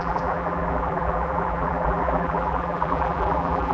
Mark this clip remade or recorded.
remade